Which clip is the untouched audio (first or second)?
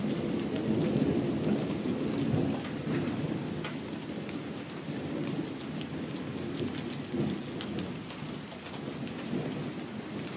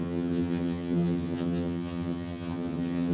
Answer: first